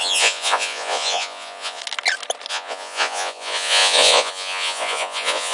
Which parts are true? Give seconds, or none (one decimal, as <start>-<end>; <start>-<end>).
1.8-2.5